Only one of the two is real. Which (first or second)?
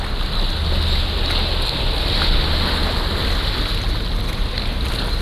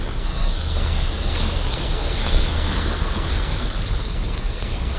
first